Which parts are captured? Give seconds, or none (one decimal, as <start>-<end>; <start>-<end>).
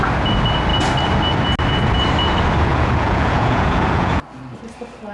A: 0.0-2.7; 4.2-5.1